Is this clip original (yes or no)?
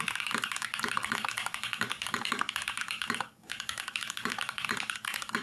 no